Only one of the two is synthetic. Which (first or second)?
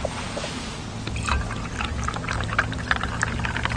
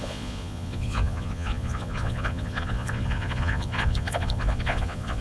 second